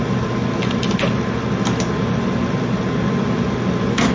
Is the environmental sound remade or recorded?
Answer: recorded